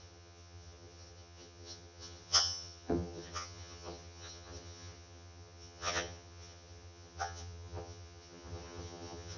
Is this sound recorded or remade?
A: remade